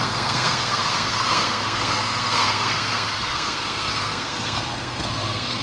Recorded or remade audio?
remade